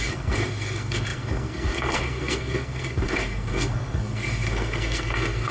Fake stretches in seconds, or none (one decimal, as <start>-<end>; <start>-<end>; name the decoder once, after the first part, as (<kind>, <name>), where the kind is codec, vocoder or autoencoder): 0.0-5.5 (codec, SNAC)